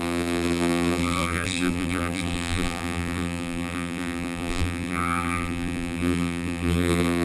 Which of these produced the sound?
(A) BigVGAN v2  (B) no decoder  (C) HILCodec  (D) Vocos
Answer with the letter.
A